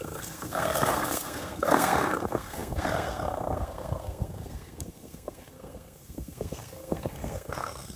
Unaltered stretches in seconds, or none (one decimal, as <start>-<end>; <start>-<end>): none